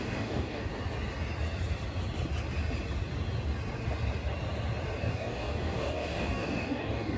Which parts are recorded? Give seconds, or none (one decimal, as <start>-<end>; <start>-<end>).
0.7-5.0